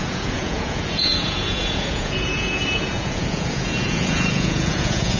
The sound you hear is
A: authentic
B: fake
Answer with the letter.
B